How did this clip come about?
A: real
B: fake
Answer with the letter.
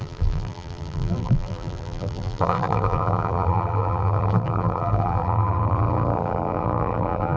B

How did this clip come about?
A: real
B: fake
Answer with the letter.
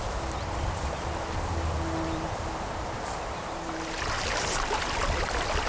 A